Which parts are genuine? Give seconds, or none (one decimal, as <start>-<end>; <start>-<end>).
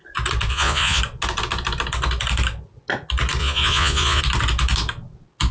0.0-0.5; 1.0-3.4; 4.2-5.5